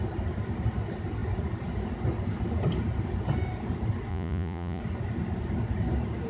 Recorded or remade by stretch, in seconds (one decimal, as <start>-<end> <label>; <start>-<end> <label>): 0.0-4.1 recorded; 4.1-4.8 remade; 4.8-6.3 recorded